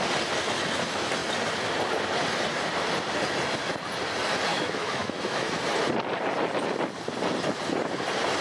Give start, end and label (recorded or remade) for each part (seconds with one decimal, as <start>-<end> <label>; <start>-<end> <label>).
0.0-4.5 recorded; 4.5-5.6 remade; 5.6-8.4 recorded